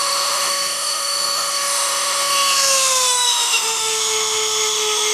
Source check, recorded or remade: remade